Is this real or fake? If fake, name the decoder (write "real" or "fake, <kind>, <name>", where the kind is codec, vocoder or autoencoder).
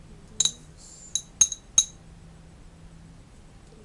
real